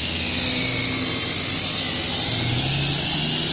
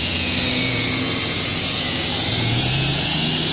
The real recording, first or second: first